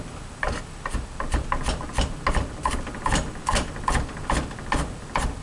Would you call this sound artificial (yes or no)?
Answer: no